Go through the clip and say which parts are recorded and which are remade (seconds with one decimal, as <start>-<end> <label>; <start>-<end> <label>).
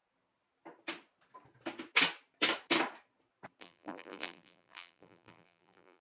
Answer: 0.0-3.6 recorded; 3.6-6.0 remade